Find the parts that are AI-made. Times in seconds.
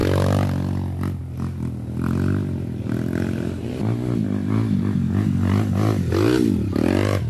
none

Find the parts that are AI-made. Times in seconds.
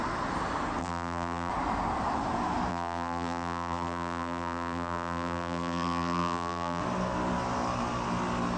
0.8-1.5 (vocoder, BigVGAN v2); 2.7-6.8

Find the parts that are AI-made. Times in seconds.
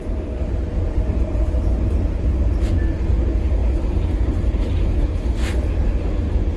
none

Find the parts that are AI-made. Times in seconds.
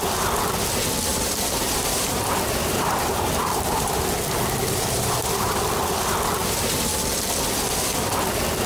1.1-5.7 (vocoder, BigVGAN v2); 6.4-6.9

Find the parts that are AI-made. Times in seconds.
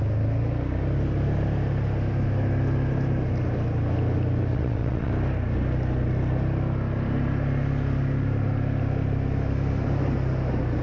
4.5-5.1 (vocoder, WaveNeXt)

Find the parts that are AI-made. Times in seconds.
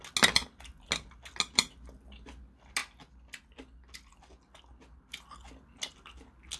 none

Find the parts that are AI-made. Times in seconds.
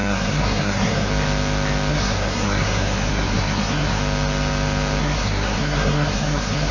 0.0-1.1 (codec, SNAC); 1.9-4.0; 5.0-6.7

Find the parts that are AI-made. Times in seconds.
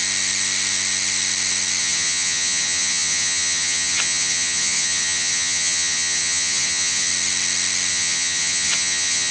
1.8-7.1 (vocoder, HiFi-GAN); 7.9-9.3